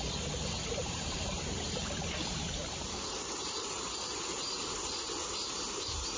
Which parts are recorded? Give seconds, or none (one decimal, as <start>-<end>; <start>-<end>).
0.0-0.8; 3.1-6.2